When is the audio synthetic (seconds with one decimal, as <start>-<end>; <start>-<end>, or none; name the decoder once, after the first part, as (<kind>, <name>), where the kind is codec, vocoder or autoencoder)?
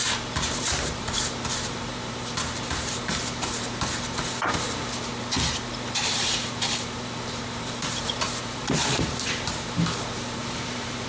0.0-5.1 (vocoder, BigVGAN v2); 6.0-11.1